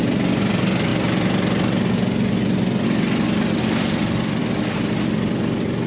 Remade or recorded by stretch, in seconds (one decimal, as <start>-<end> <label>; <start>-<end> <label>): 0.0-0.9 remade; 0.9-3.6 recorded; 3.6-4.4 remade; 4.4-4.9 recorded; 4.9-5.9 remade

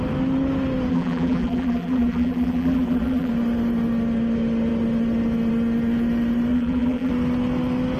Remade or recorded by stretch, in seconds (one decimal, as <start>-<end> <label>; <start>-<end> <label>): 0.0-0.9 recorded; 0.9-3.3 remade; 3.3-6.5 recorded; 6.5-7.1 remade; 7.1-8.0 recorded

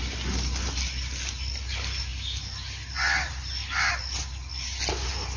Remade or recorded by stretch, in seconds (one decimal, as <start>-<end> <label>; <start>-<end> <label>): 0.0-5.4 recorded